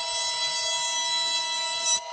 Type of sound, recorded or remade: recorded